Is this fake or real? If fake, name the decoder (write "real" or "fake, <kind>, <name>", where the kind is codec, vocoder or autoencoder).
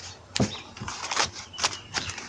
fake, vocoder, BigVGAN v2